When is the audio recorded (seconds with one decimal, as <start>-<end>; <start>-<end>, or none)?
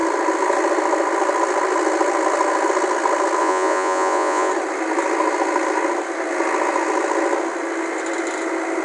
0.0-3.4; 4.5-8.8